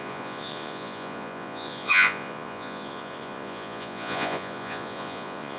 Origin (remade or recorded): remade